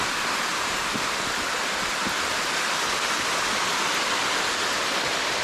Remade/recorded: recorded